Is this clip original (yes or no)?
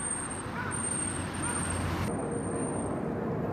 yes